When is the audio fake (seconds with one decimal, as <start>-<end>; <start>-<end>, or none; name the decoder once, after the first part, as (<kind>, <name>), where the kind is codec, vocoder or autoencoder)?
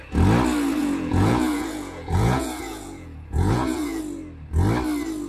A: 0.8-4.0 (vocoder, Vocos)